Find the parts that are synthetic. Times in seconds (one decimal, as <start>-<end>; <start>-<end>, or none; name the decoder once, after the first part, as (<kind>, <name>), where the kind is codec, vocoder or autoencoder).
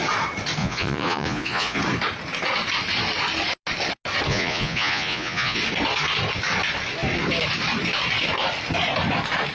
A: 0.6-1.8 (vocoder, Vocos); 4.3-5.6